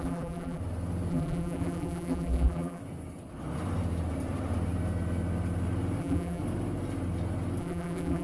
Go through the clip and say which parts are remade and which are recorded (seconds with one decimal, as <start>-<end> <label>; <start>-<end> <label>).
0.0-0.6 remade; 0.6-1.1 recorded; 1.1-2.8 remade; 2.8-6.0 recorded; 6.0-6.4 remade; 6.4-7.6 recorded; 7.6-8.2 remade